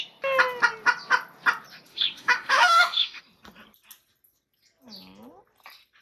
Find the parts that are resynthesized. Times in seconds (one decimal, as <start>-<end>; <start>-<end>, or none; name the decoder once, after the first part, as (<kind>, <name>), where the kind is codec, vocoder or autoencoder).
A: 1.9-3.2 (autoencoder, DAC-VAE)